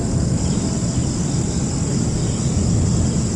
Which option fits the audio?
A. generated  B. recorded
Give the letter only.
B